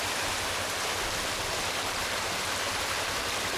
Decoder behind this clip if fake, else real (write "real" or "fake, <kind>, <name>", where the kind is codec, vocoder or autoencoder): real